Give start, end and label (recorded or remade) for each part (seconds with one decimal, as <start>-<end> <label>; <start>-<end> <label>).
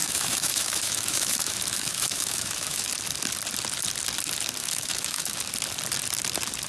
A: 0.0-2.9 remade; 2.9-4.6 recorded; 4.6-5.4 remade; 5.4-6.7 recorded